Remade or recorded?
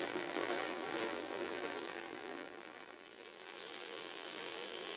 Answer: remade